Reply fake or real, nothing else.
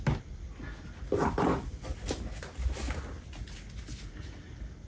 real